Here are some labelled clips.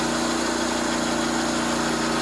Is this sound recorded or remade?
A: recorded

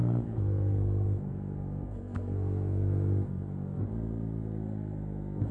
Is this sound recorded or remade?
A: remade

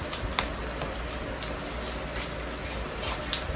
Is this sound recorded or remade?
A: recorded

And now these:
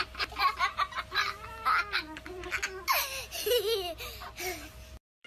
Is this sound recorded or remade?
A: recorded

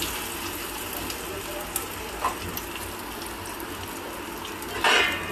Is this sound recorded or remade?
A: recorded